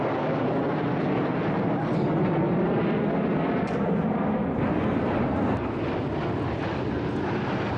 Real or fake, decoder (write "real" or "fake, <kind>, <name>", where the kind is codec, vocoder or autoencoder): real